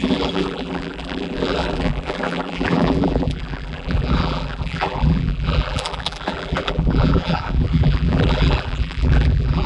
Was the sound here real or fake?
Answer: fake